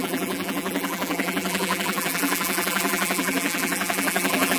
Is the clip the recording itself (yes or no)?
no